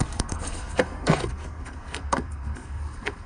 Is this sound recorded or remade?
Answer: remade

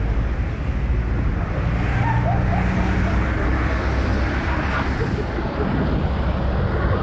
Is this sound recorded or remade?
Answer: recorded